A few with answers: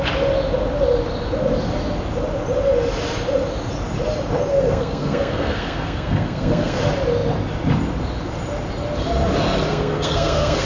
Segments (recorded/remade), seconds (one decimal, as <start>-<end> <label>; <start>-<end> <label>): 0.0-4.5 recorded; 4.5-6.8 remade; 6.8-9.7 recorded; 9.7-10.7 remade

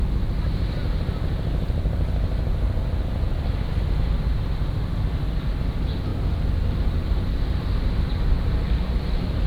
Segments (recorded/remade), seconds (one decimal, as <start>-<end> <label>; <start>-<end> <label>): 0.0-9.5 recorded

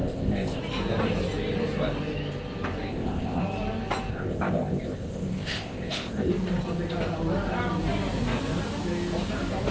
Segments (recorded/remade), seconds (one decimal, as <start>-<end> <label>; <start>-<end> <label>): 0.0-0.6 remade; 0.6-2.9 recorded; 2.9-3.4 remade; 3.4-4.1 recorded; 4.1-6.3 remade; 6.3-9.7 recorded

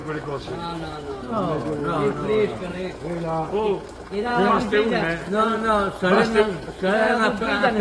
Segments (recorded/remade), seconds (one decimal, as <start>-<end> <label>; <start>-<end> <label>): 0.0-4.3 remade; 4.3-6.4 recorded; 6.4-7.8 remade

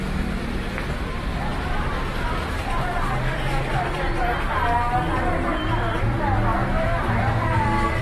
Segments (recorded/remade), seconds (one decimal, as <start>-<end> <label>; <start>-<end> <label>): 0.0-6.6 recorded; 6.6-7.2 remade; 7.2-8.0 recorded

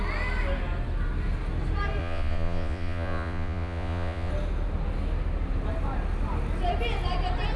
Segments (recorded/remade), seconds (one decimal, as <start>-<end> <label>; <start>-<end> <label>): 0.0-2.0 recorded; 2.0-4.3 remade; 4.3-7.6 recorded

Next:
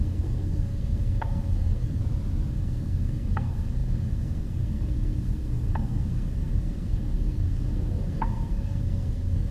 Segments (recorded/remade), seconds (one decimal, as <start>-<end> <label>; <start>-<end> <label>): 0.0-2.0 remade; 2.0-2.5 recorded; 2.5-9.5 remade